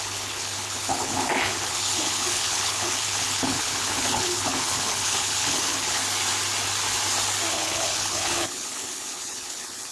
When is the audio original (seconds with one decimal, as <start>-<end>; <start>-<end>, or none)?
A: 6.0-7.5